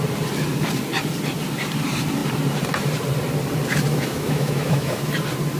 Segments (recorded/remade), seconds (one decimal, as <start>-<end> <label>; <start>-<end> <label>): 0.0-3.9 recorded; 3.9-5.0 remade; 5.0-5.6 recorded